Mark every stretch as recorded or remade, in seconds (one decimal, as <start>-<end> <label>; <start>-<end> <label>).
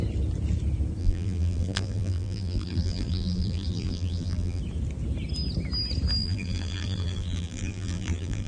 0.0-1.0 recorded; 1.0-4.6 remade; 4.6-6.2 recorded; 6.2-8.5 remade